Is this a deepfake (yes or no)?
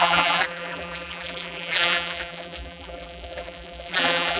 yes